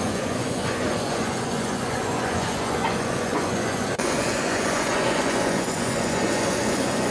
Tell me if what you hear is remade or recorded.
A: remade